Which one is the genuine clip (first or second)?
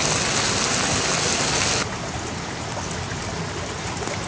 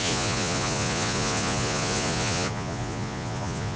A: first